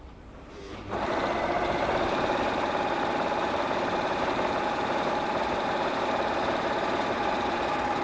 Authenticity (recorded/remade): remade